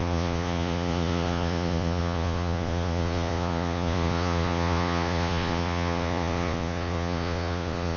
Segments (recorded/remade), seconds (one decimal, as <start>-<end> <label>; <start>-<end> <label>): 0.0-8.0 remade